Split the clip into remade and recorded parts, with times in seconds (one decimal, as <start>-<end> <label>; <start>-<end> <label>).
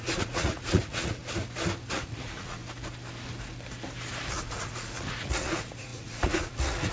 0.0-1.2 remade; 1.2-1.9 recorded; 1.9-2.6 remade; 2.6-4.3 recorded; 4.3-6.9 remade